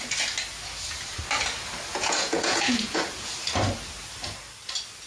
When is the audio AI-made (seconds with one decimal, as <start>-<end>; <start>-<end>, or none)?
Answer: 1.9-3.3